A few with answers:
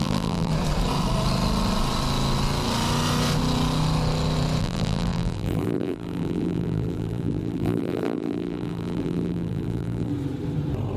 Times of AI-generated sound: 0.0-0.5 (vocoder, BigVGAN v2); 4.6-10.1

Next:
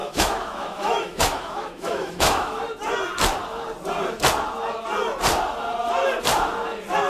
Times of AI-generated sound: 0.0-2.6 (autoencoder, DAC-VAE)